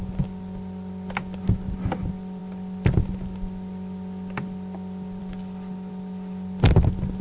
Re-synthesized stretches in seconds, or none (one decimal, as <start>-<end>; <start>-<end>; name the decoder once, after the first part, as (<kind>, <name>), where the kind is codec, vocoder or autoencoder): none